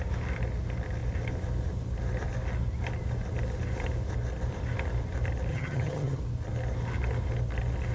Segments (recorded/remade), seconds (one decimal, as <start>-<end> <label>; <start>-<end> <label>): 0.0-5.5 recorded; 5.5-6.2 remade; 6.2-7.9 recorded